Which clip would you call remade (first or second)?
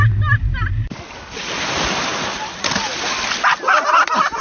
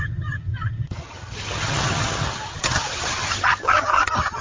second